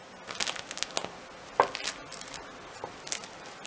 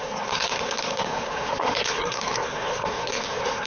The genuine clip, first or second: first